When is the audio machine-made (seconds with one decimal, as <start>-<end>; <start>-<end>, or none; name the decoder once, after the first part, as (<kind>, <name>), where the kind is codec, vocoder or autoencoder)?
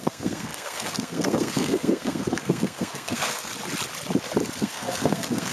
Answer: 0.0-3.5 (codec, SNAC); 4.6-5.5